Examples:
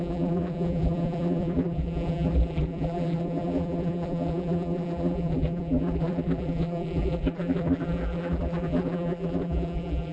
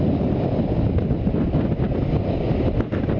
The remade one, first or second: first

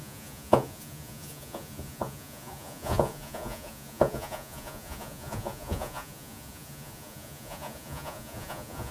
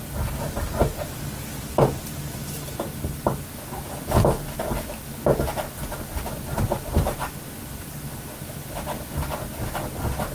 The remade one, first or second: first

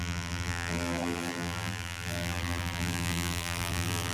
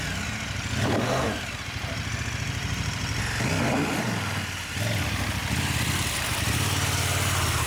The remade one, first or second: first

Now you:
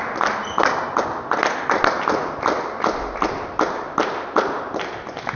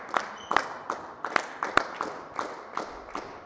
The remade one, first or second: second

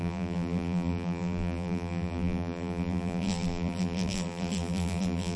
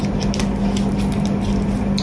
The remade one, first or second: first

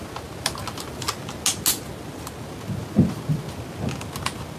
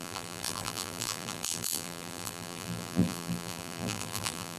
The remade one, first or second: second